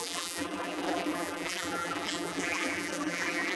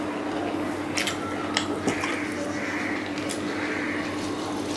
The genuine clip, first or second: second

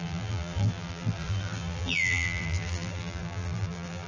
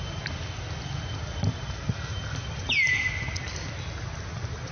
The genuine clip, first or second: second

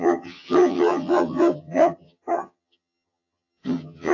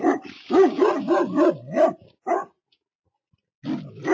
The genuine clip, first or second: second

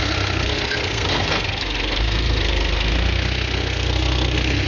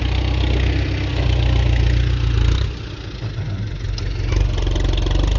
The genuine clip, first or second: second